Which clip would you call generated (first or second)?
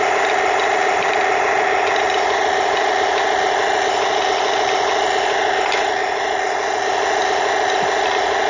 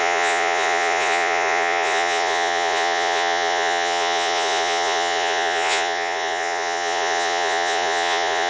second